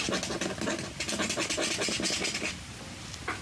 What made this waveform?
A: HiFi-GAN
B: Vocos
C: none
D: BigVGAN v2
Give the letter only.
C